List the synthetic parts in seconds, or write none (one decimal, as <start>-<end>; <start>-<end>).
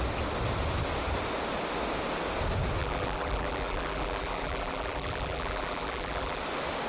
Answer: 2.8-6.4